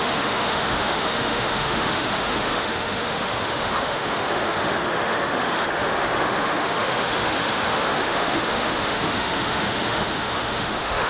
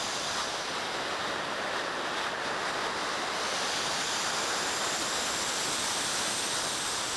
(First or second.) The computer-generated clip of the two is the first